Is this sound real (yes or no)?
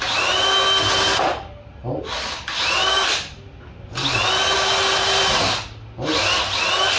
yes